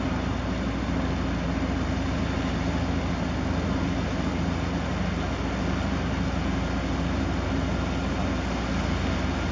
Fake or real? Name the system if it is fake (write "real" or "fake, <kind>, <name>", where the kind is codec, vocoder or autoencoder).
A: real